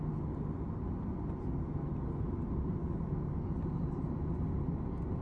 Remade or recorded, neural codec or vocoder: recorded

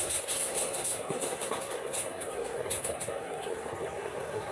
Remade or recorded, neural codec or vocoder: remade, codec, SNAC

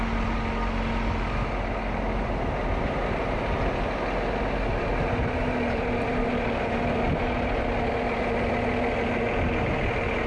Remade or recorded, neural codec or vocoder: recorded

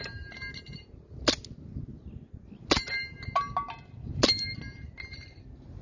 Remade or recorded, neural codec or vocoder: recorded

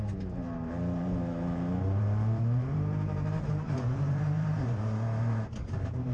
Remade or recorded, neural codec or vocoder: remade, vocoder, BigVGAN v2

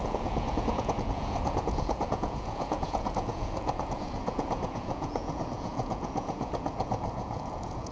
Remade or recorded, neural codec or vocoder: remade, vocoder, Vocos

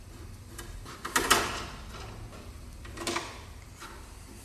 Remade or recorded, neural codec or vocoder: recorded